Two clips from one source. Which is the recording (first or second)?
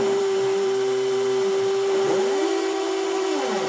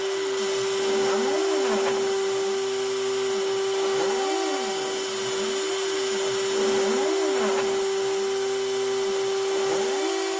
second